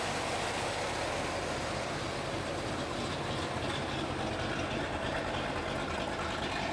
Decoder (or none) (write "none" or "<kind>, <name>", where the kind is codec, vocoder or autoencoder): none